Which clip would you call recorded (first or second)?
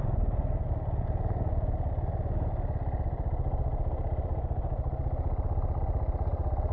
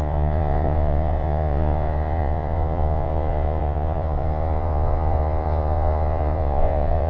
first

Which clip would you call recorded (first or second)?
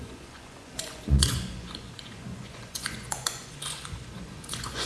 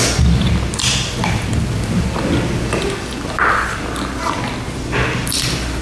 second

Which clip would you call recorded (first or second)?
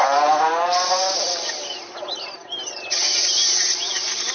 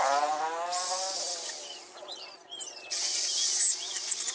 second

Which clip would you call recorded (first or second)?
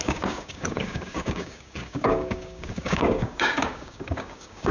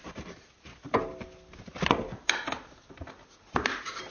second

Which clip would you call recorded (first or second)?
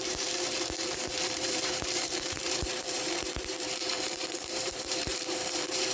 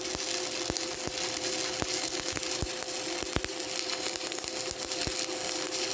second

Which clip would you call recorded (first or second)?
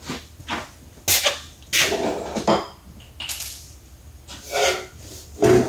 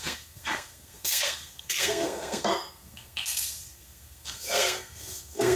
first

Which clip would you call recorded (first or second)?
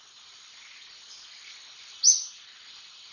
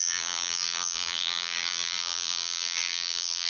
first